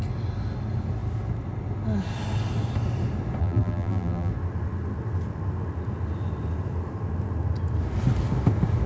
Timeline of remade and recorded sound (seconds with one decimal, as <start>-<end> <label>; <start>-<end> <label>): 0.0-3.4 recorded; 3.4-4.3 remade; 4.3-8.9 recorded